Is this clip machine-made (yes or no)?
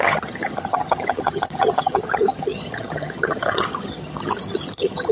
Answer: yes